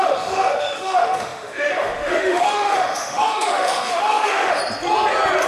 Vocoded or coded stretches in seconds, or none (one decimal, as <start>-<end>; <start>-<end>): 0.0-4.6